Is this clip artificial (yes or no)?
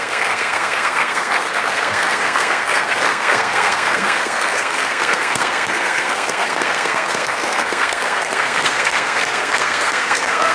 yes